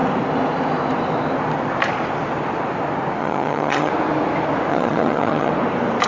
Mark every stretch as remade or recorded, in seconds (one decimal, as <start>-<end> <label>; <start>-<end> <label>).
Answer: 0.0-3.2 recorded; 3.2-3.9 remade; 3.9-4.7 recorded; 4.7-5.5 remade; 5.5-6.1 recorded